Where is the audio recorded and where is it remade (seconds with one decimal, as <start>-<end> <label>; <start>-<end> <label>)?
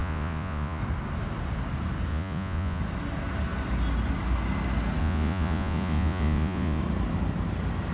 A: 0.0-0.8 remade; 0.8-2.1 recorded; 2.1-2.8 remade; 2.8-5.0 recorded; 5.0-6.8 remade; 6.8-7.9 recorded